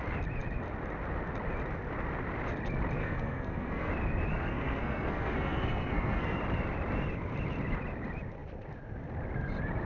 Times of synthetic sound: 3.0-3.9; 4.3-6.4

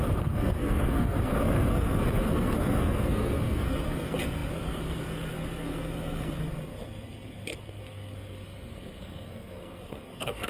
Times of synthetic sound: 0.0-10.5

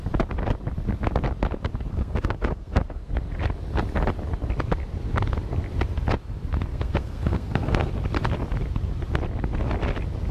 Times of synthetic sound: 1.9-3.1; 6.7-7.9

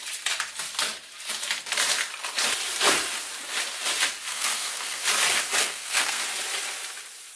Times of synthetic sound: 4.3-5.0; 5.6-6.2

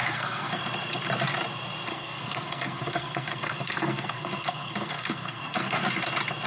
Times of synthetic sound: 0.0-0.6; 1.9-5.8

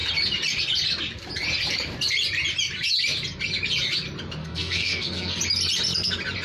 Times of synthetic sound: 4.4-5.4

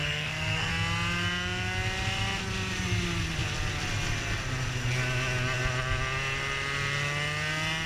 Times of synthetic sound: 0.0-0.7